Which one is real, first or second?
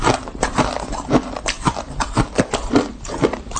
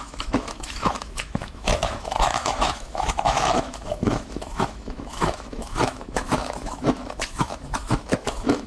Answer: first